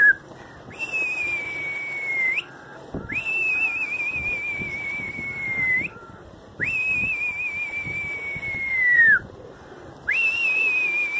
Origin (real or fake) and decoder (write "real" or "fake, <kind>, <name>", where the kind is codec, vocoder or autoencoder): fake, vocoder, BigVGAN v2